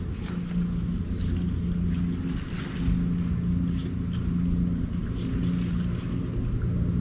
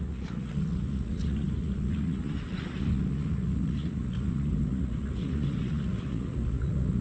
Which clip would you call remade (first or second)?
second